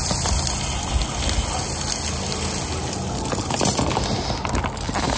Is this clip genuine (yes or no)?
yes